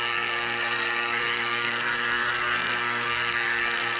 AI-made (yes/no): yes